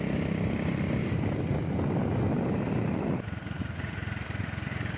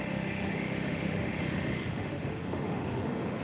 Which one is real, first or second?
first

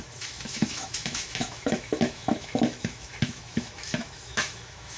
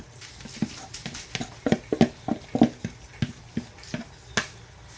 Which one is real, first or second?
second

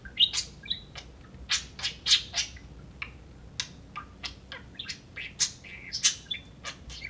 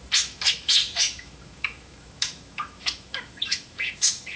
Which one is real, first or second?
first